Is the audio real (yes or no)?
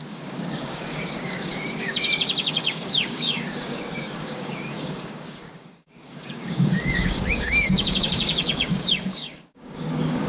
no